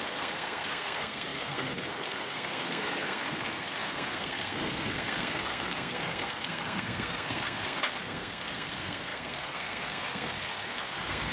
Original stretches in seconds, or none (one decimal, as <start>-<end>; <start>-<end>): none